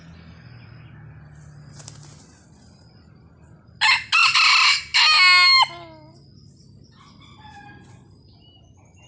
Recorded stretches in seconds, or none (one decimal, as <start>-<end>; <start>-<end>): 0.0-9.1

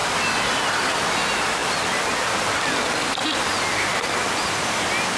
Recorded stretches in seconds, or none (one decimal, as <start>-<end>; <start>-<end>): 0.0-5.2

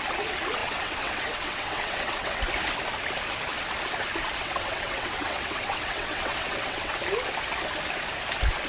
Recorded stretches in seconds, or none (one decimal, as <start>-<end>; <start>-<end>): 0.0-0.6; 2.4-4.4; 6.9-8.7

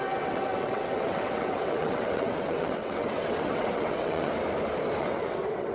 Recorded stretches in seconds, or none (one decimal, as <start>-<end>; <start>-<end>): 4.3-5.0

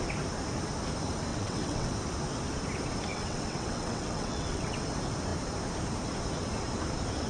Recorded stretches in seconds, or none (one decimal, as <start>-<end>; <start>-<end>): 0.0-1.3; 1.9-3.1; 4.8-7.3

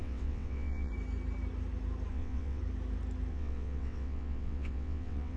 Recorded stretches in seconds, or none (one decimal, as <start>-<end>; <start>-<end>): 0.9-2.1; 2.6-3.3

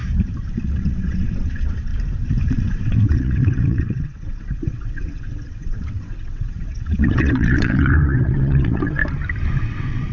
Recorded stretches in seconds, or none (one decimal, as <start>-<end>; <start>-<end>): 0.0-0.5; 1.9-2.5; 9.0-9.6

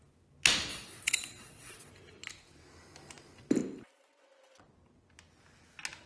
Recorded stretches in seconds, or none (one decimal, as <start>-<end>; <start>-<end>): 0.0-0.7; 1.9-6.1